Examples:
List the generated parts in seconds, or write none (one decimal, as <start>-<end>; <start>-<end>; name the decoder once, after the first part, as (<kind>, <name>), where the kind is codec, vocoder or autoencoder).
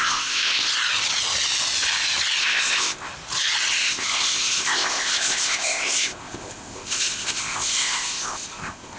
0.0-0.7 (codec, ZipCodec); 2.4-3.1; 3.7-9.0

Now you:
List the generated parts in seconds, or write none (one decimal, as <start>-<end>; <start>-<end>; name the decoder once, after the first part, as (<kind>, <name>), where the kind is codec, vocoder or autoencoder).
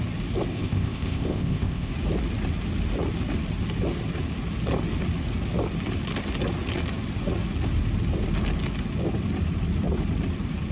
0.5-1.9 (codec, ZipCodec)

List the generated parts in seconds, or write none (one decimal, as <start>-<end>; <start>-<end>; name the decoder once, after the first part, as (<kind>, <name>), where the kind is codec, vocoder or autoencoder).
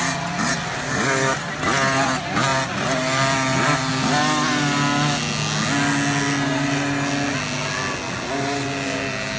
none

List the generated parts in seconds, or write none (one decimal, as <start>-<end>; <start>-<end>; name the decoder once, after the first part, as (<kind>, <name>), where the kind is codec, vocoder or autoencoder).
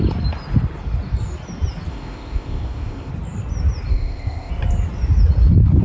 1.9-3.1 (codec, ZipCodec); 3.9-4.5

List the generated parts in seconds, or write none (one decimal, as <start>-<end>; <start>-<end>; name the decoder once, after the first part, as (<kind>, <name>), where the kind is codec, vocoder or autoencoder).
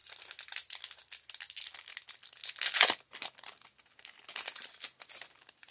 none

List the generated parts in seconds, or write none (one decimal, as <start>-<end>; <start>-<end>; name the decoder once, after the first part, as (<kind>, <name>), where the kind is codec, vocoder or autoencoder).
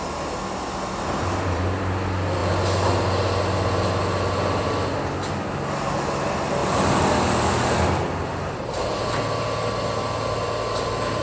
none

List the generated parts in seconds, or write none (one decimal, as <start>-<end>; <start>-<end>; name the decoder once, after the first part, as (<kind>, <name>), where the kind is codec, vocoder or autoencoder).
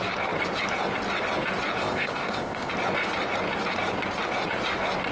1.8-2.7 (codec, ZipCodec)